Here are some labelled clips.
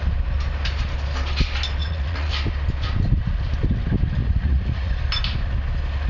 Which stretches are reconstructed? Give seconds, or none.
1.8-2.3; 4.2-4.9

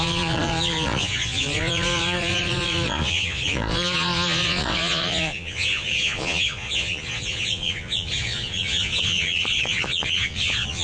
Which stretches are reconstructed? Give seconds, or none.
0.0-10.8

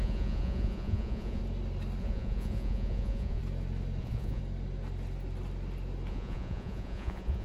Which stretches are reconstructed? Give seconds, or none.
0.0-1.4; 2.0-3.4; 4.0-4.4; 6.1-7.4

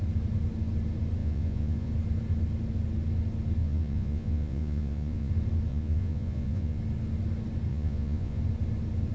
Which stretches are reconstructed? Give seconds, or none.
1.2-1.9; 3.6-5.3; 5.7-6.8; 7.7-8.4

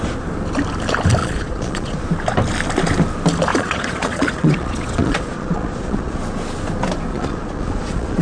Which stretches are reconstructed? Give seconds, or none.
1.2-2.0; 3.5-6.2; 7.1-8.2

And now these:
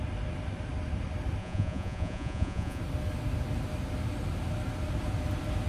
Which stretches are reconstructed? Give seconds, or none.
1.4-2.8